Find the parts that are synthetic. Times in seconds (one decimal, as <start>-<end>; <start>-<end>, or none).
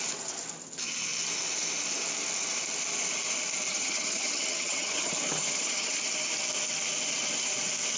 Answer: 3.7-6.0